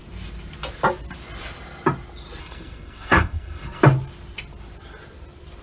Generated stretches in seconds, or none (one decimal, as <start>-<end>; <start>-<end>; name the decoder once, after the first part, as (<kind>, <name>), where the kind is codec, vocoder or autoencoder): 2.4-3.8 (codec, SNAC)